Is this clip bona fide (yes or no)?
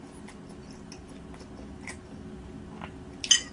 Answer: yes